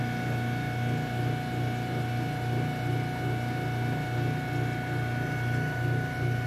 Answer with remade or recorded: recorded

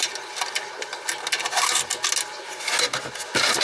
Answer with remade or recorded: recorded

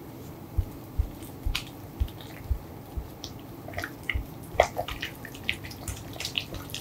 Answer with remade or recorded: remade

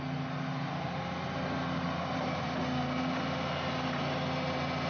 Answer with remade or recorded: recorded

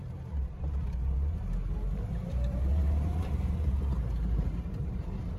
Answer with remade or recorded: remade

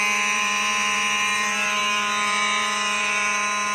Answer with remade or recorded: remade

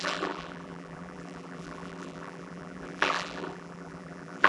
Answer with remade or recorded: remade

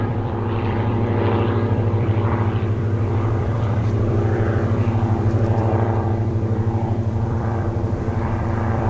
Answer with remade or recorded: remade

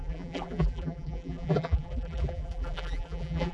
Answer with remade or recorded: remade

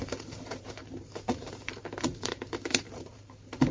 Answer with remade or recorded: remade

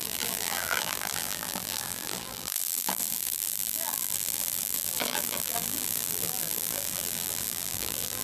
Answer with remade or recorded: remade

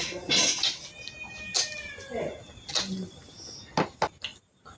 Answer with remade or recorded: recorded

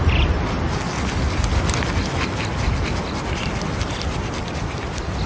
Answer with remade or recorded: recorded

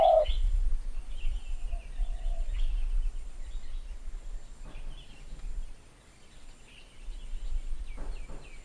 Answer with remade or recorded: recorded